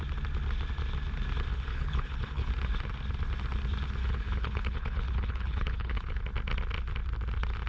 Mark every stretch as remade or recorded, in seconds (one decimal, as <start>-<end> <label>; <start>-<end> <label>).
0.0-1.5 recorded; 1.5-2.5 remade; 2.5-4.0 recorded; 4.0-6.2 remade; 6.2-7.7 recorded